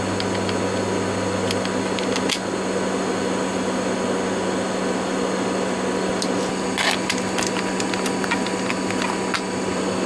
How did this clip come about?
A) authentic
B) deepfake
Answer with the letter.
A